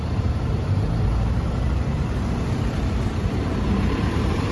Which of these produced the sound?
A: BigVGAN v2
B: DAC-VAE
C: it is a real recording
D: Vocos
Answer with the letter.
A